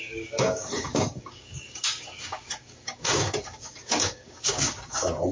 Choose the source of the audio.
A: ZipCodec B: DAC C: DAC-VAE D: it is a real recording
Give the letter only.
B